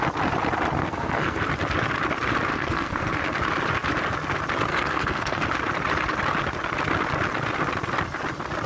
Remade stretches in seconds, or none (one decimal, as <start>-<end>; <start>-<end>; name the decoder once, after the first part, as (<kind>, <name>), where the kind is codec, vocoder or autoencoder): 0.8-1.4 (codec, SNAC); 2.5-3.2; 4.7-5.4